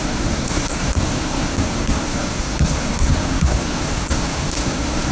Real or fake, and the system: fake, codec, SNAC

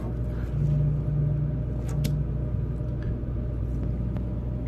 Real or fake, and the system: real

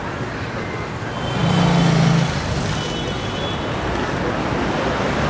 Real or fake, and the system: real